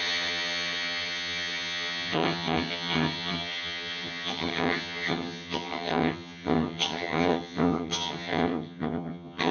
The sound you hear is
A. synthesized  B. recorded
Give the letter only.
A